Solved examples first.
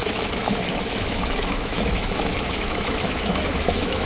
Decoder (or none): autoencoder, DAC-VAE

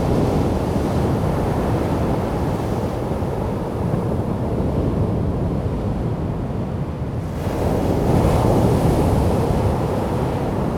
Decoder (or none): none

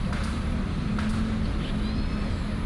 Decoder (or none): none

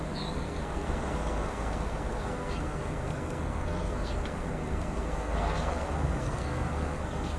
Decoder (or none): codec, SNAC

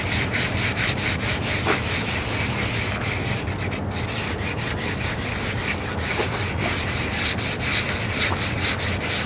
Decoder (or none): none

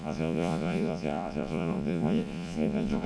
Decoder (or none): vocoder, Vocos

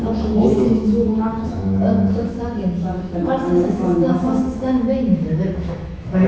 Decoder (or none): autoencoder, DAC-VAE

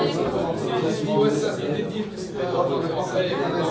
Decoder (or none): none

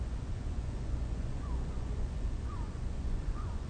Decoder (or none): vocoder, Vocos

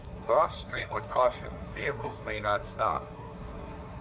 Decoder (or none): codec, SNAC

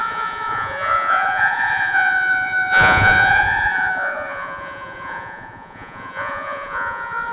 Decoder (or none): vocoder, Vocos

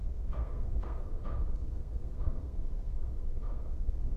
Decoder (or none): codec, SNAC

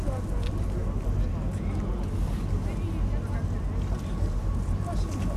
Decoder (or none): none